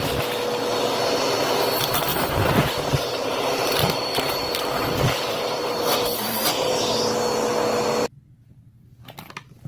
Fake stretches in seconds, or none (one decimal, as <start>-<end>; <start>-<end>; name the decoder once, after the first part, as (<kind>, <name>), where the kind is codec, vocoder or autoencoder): 2.1-6.4 (vocoder, BigVGAN v2)